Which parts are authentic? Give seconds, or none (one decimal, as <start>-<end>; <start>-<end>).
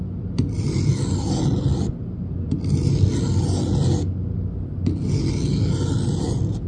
0.0-6.7